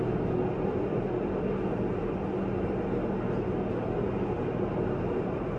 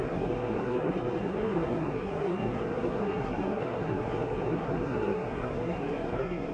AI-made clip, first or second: second